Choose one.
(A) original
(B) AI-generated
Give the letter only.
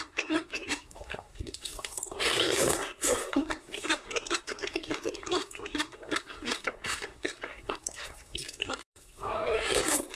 B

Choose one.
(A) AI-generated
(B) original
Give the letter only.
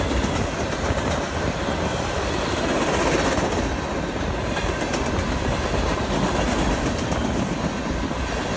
B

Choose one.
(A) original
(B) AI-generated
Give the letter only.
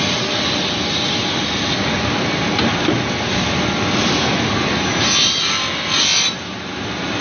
A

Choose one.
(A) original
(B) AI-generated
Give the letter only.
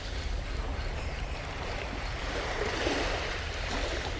B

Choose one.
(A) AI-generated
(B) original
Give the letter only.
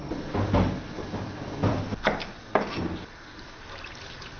B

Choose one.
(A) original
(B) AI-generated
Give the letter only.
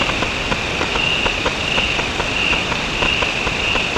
A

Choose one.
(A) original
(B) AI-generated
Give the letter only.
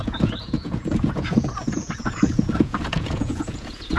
B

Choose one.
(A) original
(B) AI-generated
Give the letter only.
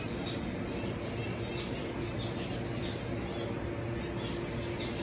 A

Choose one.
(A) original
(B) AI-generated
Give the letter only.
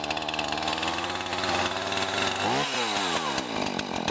A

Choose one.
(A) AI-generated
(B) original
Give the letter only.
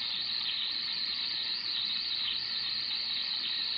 B